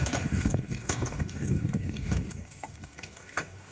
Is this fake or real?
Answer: fake